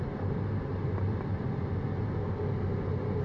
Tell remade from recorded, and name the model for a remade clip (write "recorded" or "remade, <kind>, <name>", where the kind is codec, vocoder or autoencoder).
recorded